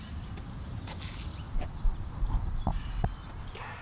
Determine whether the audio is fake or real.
real